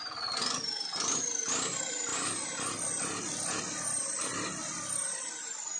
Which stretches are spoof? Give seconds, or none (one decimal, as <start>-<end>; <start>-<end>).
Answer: none